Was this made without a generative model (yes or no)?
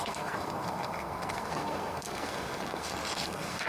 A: no